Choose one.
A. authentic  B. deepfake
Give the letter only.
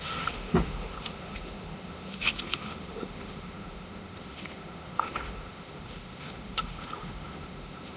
B